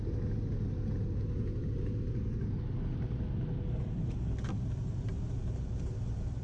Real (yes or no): yes